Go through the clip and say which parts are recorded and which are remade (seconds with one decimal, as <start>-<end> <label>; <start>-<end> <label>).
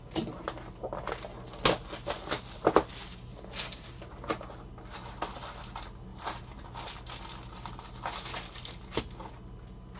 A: 0.0-10.0 recorded